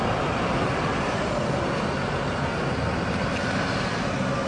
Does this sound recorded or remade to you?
recorded